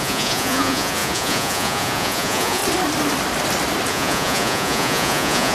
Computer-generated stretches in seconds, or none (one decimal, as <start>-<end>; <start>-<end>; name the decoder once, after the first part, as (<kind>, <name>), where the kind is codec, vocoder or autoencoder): 0.0-2.6 (vocoder, Vocos); 3.9-5.5